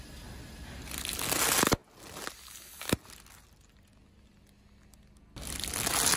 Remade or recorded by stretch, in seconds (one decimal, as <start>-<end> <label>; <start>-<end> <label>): 0.0-6.2 recorded